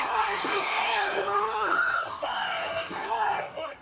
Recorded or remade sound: remade